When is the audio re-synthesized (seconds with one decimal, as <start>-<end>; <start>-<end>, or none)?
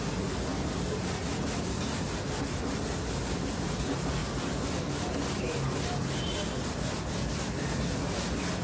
none